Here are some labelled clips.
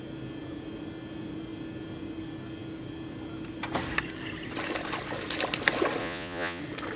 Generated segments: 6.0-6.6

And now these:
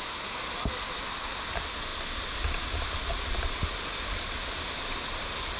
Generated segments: none

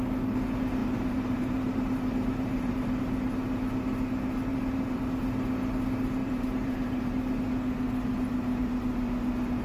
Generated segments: 0.8-3.0; 4.5-5.0; 6.2-7.1